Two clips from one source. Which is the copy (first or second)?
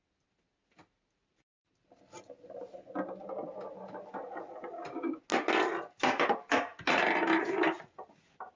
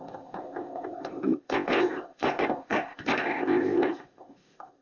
second